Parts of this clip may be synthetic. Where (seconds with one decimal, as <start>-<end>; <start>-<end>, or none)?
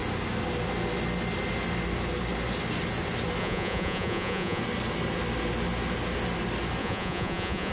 3.4-4.6; 6.8-7.7